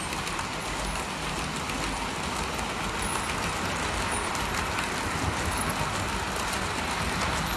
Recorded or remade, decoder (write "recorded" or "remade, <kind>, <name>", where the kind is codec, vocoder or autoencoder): recorded